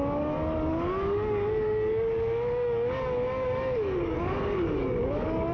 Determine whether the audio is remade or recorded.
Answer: remade